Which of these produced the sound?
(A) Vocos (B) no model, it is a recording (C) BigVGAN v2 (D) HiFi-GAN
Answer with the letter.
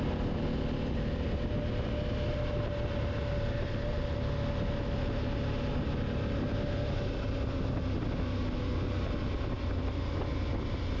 B